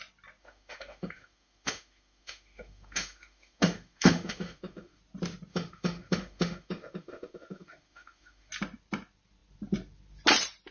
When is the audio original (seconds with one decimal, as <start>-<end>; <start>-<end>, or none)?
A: 0.0-0.4; 5.0-5.5; 8.5-10.7